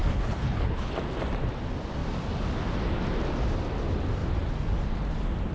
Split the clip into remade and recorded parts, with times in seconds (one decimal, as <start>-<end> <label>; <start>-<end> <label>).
0.0-0.9 remade; 0.9-5.5 recorded